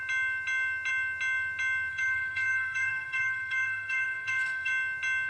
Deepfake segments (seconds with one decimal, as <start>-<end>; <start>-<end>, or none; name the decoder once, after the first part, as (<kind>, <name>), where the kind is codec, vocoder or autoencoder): 1.9-4.7 (codec, SNAC)